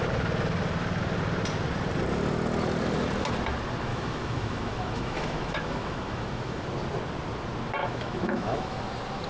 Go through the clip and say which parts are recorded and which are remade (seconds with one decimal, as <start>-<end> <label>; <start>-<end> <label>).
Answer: 0.0-3.9 recorded; 3.9-6.6 remade; 6.6-7.8 recorded; 7.8-8.8 remade; 8.8-9.3 recorded